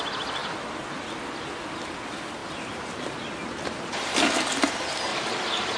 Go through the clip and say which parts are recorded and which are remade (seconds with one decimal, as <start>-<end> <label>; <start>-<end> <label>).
0.0-5.1 recorded; 5.1-5.8 remade